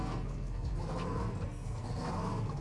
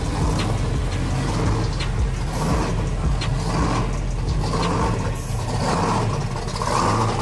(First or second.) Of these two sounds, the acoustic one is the second